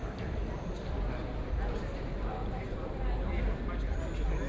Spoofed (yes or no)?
no